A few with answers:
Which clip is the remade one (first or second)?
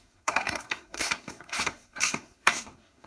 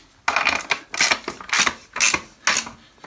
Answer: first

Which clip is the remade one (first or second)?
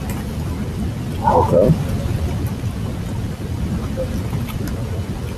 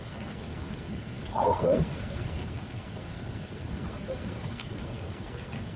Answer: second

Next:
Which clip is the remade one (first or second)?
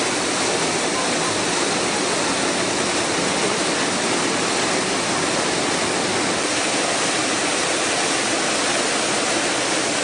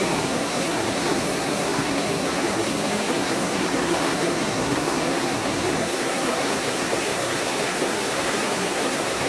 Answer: second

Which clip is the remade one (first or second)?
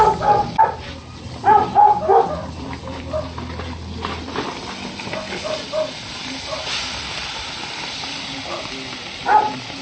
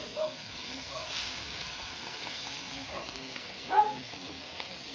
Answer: second